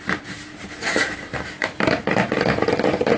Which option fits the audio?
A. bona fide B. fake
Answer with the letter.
B